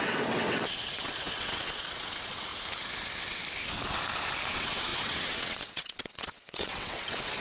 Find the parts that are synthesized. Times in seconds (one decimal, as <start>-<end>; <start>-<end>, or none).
0.0-2.5; 4.5-7.4